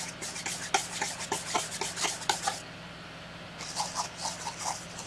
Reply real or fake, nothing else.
real